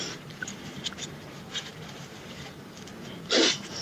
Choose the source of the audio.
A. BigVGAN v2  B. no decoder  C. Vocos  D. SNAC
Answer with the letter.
A